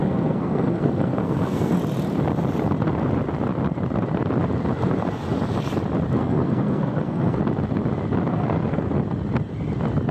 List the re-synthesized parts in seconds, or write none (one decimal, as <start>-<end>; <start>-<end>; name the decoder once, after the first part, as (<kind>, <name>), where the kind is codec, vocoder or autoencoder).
0.0-1.7 (codec, SNAC); 6.2-7.4; 8.3-8.9